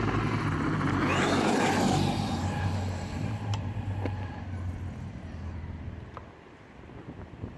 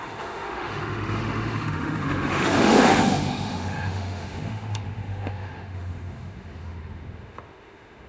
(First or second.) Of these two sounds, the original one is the first